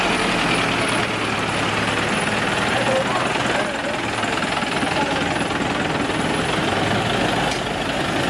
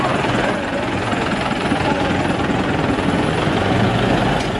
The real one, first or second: first